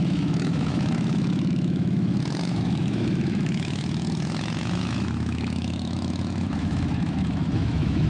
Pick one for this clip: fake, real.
fake